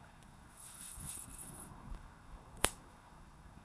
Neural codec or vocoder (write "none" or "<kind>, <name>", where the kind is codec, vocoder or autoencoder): codec, SNAC